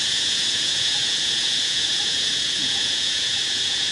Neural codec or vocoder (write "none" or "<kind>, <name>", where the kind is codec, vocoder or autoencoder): vocoder, Vocos